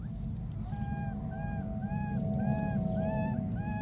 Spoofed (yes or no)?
no